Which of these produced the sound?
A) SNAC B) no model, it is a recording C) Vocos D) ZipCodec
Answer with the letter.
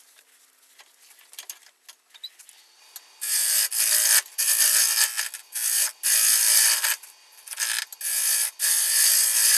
B